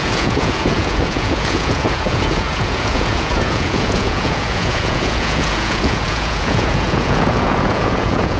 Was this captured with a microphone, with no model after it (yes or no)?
no